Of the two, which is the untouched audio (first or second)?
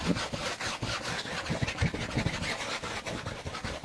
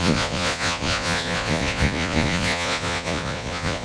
first